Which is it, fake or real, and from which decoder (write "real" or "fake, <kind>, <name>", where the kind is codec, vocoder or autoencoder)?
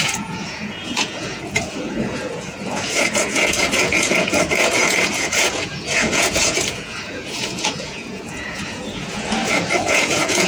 fake, vocoder, Vocos